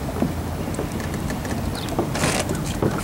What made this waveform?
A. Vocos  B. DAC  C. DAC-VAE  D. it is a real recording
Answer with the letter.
D